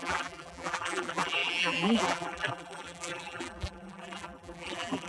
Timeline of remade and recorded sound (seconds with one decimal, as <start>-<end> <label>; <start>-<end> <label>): 0.0-5.1 remade